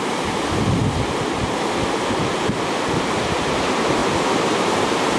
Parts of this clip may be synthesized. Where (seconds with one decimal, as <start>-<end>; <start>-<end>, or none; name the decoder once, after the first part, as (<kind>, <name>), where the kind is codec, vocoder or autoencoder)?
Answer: 0.0-0.8 (vocoder, BigVGAN v2); 3.3-5.2